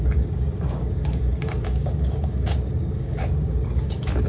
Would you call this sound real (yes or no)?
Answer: no